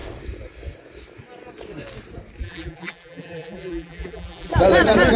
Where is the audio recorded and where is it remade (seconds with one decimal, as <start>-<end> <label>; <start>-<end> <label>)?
0.0-2.4 recorded; 2.4-4.5 remade; 4.5-5.2 recorded